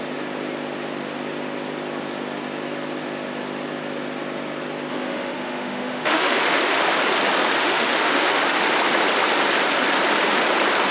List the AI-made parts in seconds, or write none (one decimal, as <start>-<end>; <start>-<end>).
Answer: 4.9-7.0; 7.6-8.4

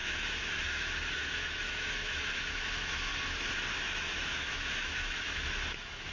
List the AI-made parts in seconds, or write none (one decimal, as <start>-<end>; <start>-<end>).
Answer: 0.0-3.1; 3.7-6.1

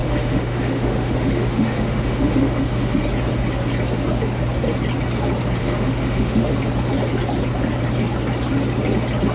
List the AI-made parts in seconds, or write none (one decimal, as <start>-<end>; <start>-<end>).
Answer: 0.0-3.0; 5.6-6.5

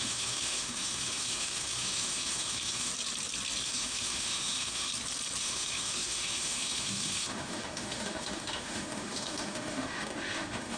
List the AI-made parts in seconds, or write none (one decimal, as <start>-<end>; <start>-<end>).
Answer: 0.0-2.9; 3.6-4.9; 5.4-10.8